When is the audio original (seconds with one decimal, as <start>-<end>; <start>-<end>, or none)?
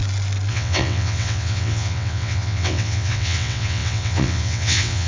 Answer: 0.0-0.5